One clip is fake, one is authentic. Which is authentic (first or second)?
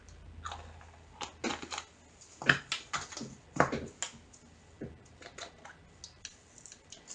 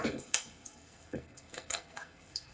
first